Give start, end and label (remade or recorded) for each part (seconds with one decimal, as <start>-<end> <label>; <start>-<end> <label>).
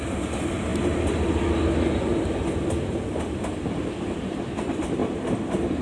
0.0-0.7 remade; 0.7-3.7 recorded; 3.7-5.0 remade; 5.0-5.8 recorded